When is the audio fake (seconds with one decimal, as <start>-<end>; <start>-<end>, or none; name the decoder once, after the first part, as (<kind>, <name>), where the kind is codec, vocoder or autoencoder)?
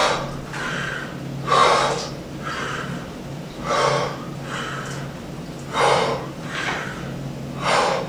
none